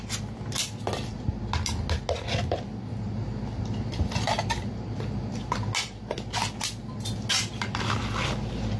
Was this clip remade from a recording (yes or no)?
no